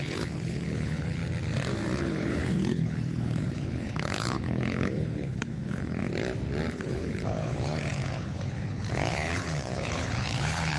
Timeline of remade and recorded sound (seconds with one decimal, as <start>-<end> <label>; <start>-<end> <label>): 0.0-1.2 remade; 1.2-2.0 recorded; 2.0-6.0 remade; 6.0-6.7 recorded; 6.7-10.8 remade